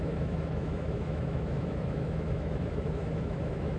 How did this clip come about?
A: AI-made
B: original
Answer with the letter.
A